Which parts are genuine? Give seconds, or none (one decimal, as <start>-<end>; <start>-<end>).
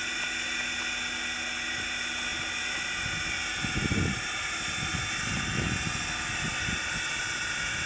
0.0-7.9